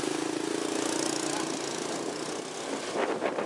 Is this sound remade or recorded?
recorded